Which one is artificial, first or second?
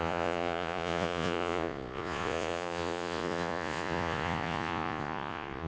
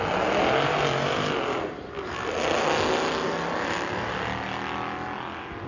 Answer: first